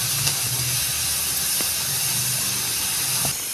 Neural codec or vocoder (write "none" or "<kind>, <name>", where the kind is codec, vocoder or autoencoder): none